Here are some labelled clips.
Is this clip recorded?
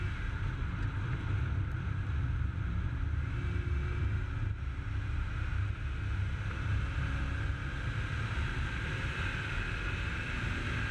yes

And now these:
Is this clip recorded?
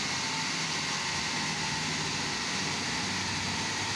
yes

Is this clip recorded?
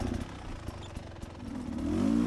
yes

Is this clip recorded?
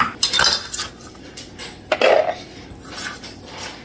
yes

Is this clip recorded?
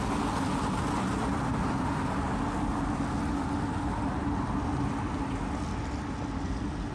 yes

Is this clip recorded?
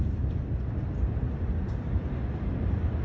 yes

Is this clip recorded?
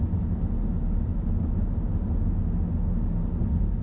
yes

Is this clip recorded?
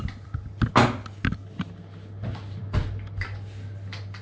yes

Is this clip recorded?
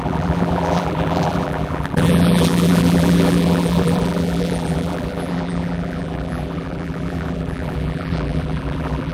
no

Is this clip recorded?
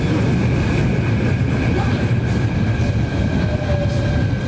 yes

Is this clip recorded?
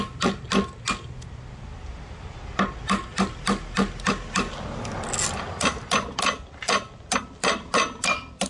yes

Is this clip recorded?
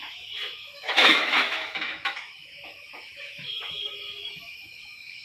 no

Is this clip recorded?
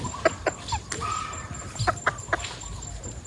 yes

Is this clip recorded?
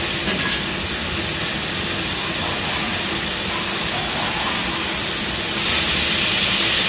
yes